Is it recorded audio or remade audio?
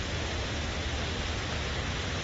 recorded